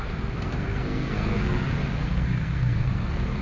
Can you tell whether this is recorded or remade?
remade